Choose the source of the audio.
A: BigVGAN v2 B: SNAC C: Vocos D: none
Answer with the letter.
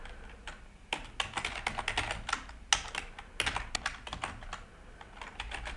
D